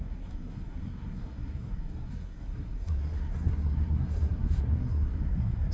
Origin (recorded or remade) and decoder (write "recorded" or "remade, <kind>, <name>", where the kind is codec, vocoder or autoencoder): remade, codec, SNAC